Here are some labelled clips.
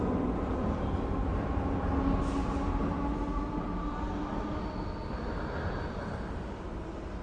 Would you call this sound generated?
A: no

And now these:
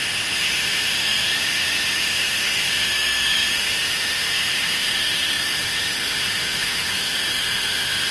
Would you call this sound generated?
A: yes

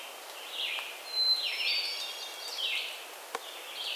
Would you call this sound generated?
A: no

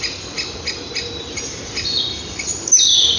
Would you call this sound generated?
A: no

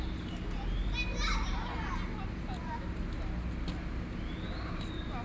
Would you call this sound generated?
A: no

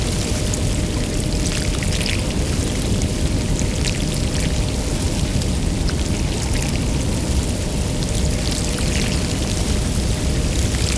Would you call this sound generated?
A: no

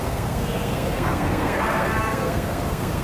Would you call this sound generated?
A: yes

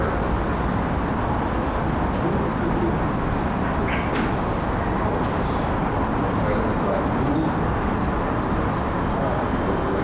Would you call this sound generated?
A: no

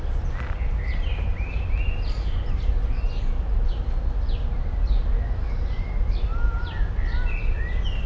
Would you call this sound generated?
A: no